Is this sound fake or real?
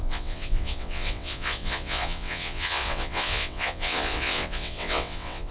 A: fake